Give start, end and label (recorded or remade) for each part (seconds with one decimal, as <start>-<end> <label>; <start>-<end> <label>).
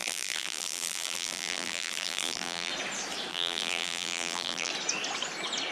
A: 0.0-2.7 remade; 2.7-3.3 recorded; 3.3-4.7 remade; 4.7-5.7 recorded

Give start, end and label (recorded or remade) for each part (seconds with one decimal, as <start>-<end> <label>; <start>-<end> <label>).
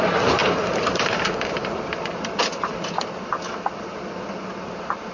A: 0.0-0.4 recorded; 0.4-3.5 remade; 3.5-5.1 recorded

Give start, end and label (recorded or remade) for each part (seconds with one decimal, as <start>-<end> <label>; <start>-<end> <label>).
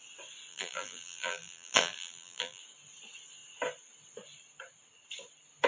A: 0.0-0.5 recorded; 0.5-2.6 remade; 2.6-5.7 recorded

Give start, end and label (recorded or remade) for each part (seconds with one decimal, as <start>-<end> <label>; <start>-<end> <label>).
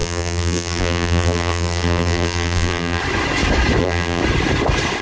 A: 0.0-3.0 remade; 3.0-3.8 recorded; 3.8-4.2 remade; 4.2-5.0 recorded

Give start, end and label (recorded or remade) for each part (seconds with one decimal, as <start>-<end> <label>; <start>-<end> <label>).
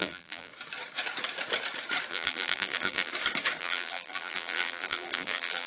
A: 0.0-0.5 remade; 0.5-2.1 recorded; 2.1-3.1 remade; 3.1-3.6 recorded; 3.6-5.7 remade